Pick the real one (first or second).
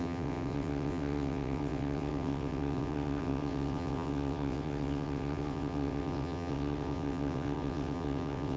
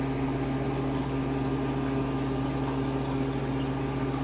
second